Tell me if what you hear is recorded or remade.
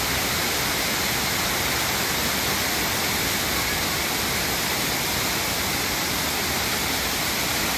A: recorded